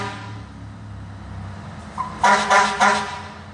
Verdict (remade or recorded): recorded